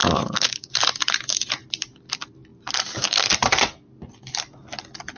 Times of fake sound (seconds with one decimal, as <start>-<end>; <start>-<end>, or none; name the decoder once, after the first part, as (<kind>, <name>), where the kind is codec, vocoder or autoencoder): 0.0-0.7 (autoencoder, DAC-VAE)